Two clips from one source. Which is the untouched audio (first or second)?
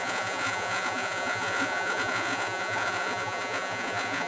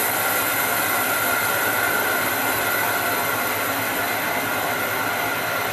second